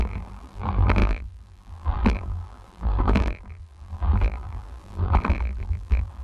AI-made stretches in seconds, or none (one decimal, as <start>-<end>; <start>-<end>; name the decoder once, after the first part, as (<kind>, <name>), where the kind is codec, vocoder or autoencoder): 0.0-6.2 (vocoder, BigVGAN v2)